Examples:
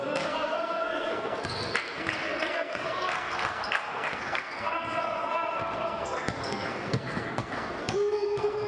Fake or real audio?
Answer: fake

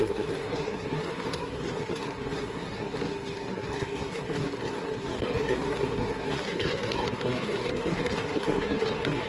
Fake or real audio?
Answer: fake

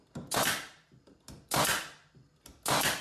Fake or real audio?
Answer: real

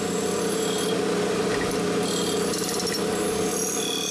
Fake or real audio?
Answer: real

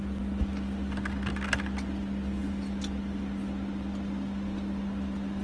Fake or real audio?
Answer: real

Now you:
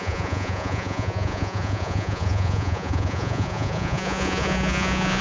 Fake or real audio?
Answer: fake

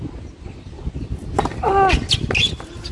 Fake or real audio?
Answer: real